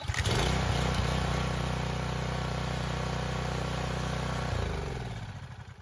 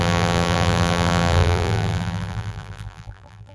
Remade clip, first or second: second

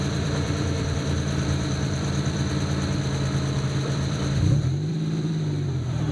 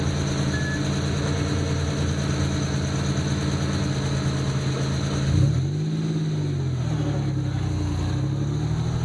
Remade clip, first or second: first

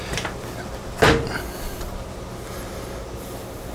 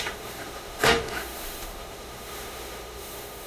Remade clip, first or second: second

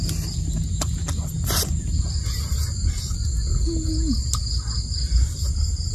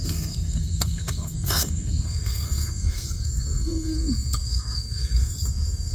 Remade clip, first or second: second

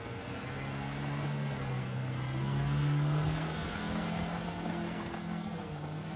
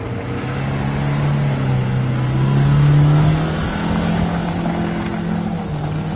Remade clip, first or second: first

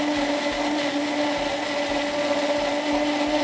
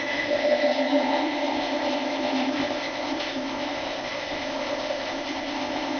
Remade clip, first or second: second